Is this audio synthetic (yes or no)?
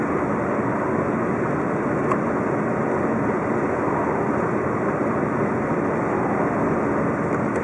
no